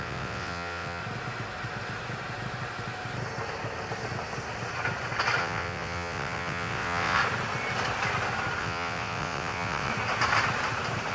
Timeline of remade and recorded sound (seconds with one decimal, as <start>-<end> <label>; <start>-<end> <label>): 0.0-1.0 remade; 1.0-5.4 recorded; 5.4-7.2 remade; 7.2-8.6 recorded; 8.6-9.9 remade; 9.9-11.1 recorded

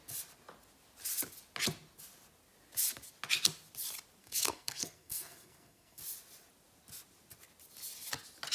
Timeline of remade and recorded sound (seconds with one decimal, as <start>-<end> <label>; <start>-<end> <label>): 0.0-4.2 recorded; 4.2-6.0 remade; 6.0-8.5 recorded

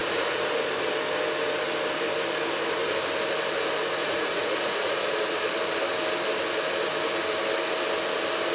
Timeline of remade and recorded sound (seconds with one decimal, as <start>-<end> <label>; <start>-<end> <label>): 0.0-0.6 remade; 0.6-4.0 recorded; 4.0-5.1 remade; 5.1-8.5 recorded

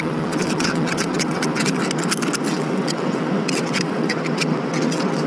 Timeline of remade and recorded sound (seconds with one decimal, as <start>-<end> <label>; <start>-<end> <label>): 0.0-1.8 remade; 1.8-2.5 recorded; 2.5-5.3 remade

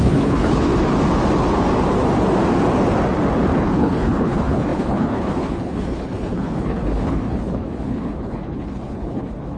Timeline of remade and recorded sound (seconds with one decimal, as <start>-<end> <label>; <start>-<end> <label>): 0.0-0.7 remade; 0.7-3.6 recorded; 3.6-9.6 remade

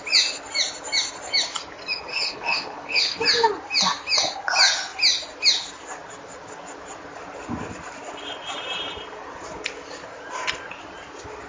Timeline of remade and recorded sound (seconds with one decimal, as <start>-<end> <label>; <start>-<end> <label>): 0.0-2.1 recorded; 2.1-3.2 remade; 3.2-11.5 recorded

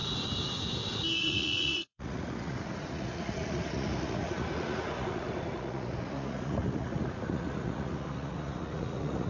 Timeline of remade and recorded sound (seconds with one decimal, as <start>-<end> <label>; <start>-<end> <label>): 0.0-1.2 recorded; 1.2-9.3 remade